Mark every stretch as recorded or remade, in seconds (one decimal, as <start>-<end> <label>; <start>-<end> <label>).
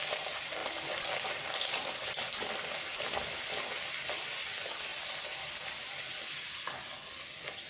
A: 0.0-7.7 recorded